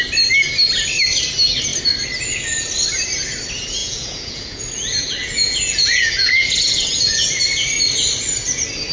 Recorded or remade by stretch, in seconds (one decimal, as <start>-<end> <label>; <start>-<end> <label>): 0.0-3.8 recorded; 3.8-4.6 remade; 4.6-5.2 recorded; 5.2-7.3 remade; 7.3-8.9 recorded